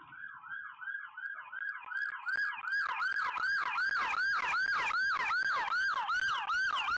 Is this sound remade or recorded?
recorded